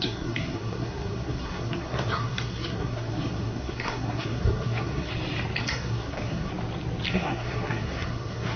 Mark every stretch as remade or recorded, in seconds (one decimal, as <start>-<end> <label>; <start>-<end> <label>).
0.0-5.1 remade; 5.1-5.6 recorded; 5.6-6.5 remade; 6.5-7.1 recorded; 7.1-8.6 remade